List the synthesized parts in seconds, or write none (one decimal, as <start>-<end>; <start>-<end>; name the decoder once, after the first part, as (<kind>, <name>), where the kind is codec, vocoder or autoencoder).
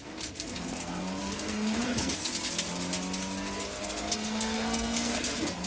0.0-2.3 (codec, SNAC); 3.8-5.7